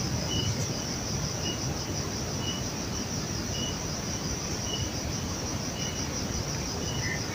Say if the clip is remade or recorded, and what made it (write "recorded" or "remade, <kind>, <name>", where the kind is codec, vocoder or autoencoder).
recorded